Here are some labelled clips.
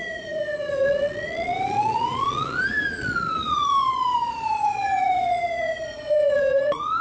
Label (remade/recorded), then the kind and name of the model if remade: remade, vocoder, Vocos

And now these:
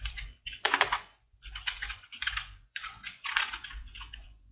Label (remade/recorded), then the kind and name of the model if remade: remade, vocoder, Vocos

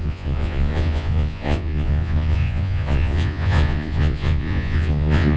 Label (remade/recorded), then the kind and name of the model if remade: remade, vocoder, Vocos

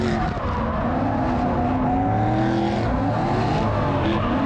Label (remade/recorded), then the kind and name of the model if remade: recorded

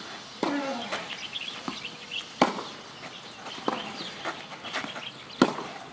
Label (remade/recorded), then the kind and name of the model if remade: recorded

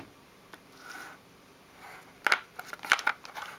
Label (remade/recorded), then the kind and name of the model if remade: recorded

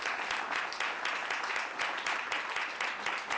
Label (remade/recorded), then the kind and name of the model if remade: recorded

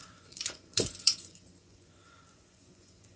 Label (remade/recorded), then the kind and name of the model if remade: remade, vocoder, Vocos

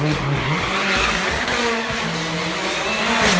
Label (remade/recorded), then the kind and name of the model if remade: recorded